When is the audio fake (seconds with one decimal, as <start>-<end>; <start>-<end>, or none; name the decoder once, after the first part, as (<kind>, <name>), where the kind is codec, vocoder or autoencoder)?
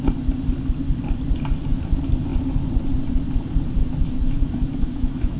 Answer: 3.8-5.4 (autoencoder, DAC-VAE)